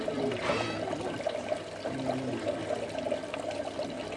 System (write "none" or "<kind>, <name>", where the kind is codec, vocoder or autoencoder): none